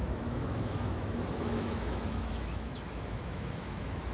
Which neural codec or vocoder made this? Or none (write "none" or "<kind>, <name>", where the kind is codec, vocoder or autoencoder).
autoencoder, DAC-VAE